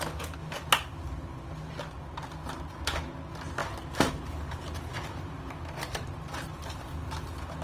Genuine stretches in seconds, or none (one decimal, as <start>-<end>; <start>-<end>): 0.0-3.6; 6.9-7.6